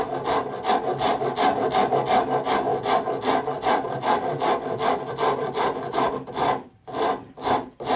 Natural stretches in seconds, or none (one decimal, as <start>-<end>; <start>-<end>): 0.0-8.0